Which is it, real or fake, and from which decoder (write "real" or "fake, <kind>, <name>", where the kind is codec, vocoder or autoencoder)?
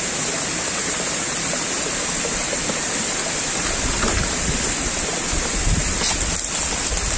real